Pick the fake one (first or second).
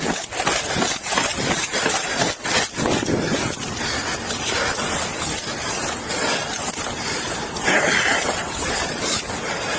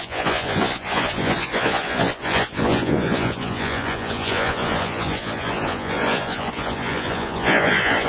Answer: second